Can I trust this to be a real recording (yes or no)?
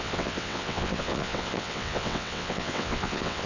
no